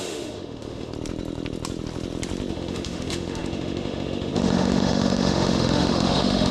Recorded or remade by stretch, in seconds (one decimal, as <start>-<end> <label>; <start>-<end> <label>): 0.0-0.9 remade; 0.9-2.5 recorded; 2.5-6.5 remade